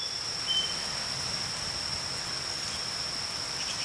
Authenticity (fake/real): real